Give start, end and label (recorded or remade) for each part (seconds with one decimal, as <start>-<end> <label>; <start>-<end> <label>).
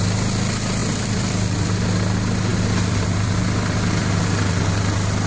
0.0-0.8 recorded; 0.8-1.8 remade; 1.8-2.5 recorded; 2.5-3.3 remade; 3.3-4.0 recorded; 4.0-4.6 remade; 4.6-5.3 recorded